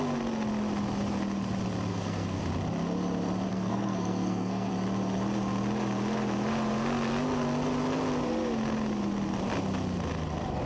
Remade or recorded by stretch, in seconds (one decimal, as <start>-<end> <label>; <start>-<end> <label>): 0.0-1.9 recorded; 1.9-2.4 remade; 2.4-3.5 recorded; 3.5-4.7 remade; 4.7-10.7 recorded